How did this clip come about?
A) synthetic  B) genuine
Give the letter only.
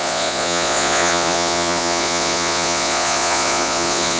A